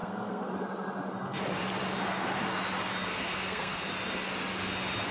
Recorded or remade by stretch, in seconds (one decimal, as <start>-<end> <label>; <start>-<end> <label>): 0.0-0.5 remade; 0.5-3.1 recorded; 3.1-3.9 remade; 3.9-5.1 recorded